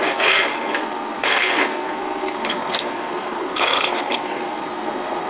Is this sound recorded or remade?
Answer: remade